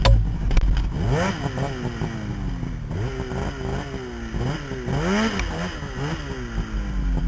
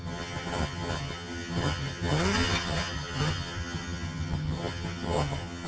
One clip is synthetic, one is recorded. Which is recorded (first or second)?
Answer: first